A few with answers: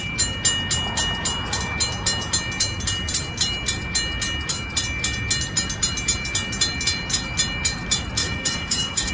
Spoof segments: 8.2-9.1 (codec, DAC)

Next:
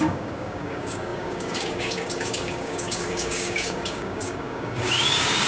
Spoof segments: 0.0-5.5 (codec, DAC)

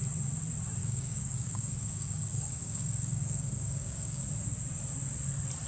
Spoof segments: 0.8-4.2 (codec, DAC)

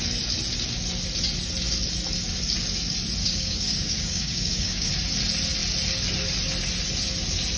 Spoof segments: 3.2-4.9 (codec, DAC)

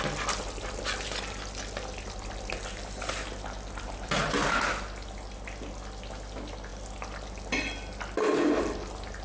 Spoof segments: none

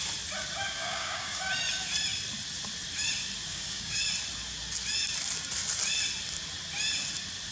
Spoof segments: 0.8-1.5 (codec, DAC); 3.5-4.0

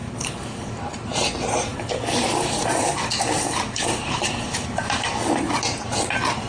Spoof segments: 0.0-0.8 (codec, DAC); 1.7-5.6

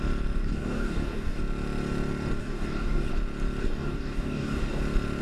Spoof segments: 0.4-1.4 (codec, DAC); 2.4-3.1; 3.6-4.8